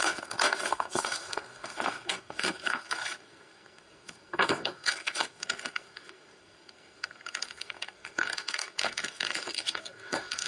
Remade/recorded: remade